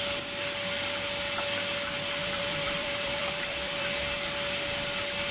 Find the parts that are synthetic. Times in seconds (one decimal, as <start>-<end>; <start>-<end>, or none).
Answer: 2.2-4.0